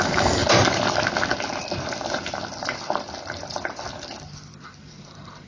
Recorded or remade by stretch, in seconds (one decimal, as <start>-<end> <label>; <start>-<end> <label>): 0.0-0.4 remade; 0.4-0.9 recorded; 0.9-5.5 remade